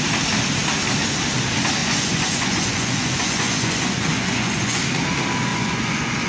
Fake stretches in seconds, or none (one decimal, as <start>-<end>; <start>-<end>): 1.8-4.8; 5.5-6.3